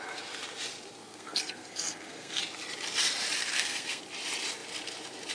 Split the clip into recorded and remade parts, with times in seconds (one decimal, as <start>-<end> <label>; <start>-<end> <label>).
0.0-1.0 recorded; 1.0-2.4 remade; 2.4-3.4 recorded; 3.4-4.0 remade; 4.0-5.3 recorded